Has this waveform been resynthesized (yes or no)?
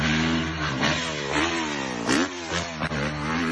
no